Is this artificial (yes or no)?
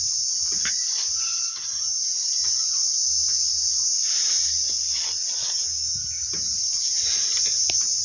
no